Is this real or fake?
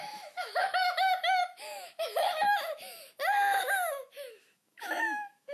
fake